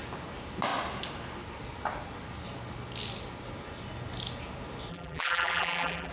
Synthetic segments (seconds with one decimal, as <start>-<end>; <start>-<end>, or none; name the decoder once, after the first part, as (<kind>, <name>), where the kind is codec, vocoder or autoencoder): 4.9-6.1 (vocoder, BigVGAN v2)